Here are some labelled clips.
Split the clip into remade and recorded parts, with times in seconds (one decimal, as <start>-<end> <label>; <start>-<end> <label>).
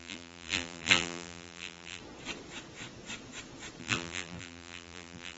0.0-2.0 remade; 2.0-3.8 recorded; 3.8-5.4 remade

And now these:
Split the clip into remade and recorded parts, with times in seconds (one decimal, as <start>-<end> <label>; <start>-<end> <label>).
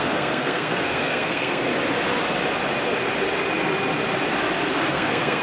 0.0-1.7 remade; 1.7-4.9 recorded; 4.9-5.4 remade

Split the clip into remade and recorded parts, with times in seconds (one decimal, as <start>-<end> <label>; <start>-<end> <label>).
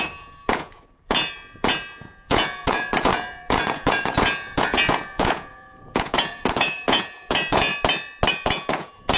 0.0-7.7 remade; 7.7-8.3 recorded; 8.3-9.2 remade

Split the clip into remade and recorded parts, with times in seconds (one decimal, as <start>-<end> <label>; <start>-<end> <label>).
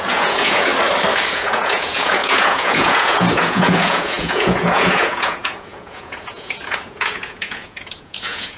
0.0-0.7 remade; 0.7-1.3 recorded; 1.3-8.6 remade